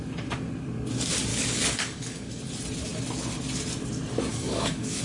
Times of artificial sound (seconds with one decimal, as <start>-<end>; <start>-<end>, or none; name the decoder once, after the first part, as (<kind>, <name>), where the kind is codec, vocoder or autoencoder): 1.3-2.4 (codec, DAC); 4.3-5.0